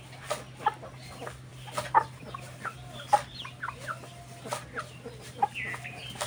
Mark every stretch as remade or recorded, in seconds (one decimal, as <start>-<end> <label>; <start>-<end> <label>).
0.0-6.3 recorded

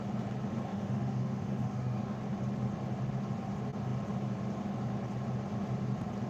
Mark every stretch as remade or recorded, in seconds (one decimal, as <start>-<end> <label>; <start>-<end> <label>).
0.0-0.7 recorded; 0.7-2.2 remade; 2.2-6.3 recorded